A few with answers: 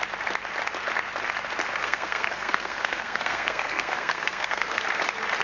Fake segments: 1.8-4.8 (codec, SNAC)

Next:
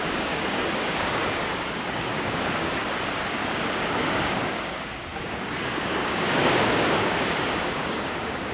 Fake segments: 0.0-2.8 (codec, DAC); 3.3-8.5

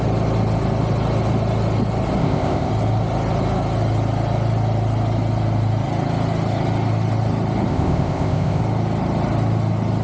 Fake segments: 2.2-2.7 (codec, ZipCodec); 7.7-8.6